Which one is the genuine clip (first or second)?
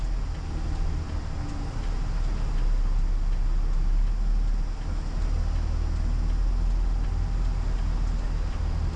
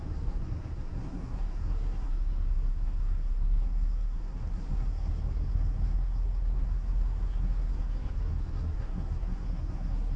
first